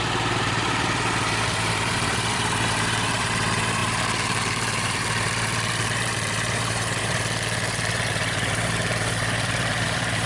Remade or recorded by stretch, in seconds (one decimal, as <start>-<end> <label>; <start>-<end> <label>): 0.0-10.3 remade